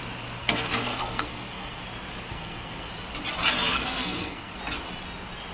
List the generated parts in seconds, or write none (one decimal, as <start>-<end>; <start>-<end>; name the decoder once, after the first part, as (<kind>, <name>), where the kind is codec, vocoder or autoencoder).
0.4-1.8 (codec, SNAC); 2.3-2.9; 3.7-4.6